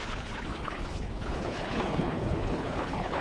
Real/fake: fake